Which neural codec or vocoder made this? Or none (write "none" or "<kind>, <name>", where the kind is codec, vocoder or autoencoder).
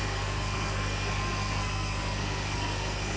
codec, SNAC